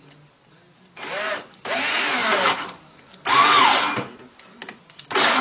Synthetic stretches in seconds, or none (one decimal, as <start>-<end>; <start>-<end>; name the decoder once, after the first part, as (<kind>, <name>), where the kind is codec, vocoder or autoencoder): none

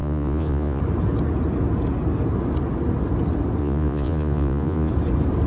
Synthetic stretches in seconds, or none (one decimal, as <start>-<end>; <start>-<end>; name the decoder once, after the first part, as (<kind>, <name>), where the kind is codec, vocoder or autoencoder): 0.0-0.8 (vocoder, Vocos); 3.6-4.9

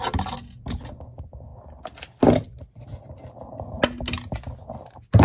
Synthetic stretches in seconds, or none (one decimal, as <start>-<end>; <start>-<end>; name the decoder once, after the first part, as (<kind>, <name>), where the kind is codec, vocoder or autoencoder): none

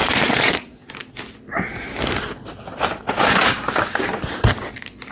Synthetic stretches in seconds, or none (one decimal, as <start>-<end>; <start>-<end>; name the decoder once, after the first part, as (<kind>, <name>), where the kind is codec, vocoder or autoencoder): 0.0-0.9 (vocoder, Vocos)